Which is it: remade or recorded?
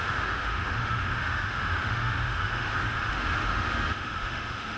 remade